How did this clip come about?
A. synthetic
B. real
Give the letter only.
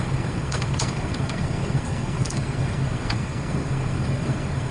A